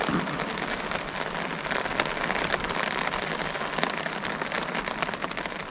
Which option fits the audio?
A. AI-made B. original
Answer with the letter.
B